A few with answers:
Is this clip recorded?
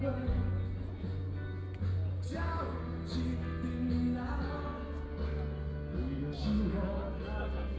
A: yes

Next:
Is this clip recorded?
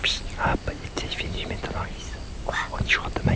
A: yes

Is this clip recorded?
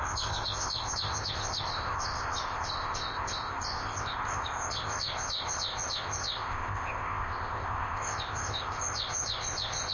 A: no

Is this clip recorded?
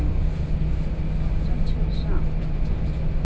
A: yes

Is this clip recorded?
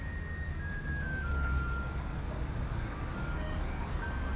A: no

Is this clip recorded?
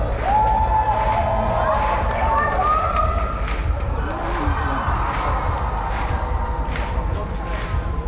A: yes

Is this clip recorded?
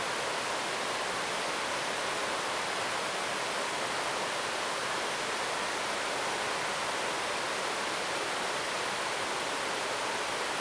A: yes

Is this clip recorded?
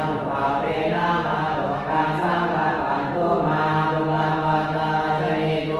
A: no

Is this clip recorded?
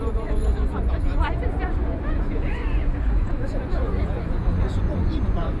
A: no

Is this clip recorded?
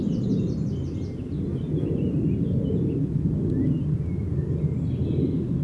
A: yes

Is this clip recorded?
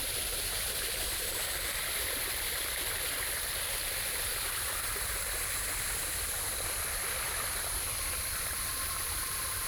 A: no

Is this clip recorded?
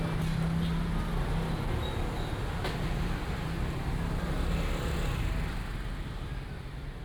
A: yes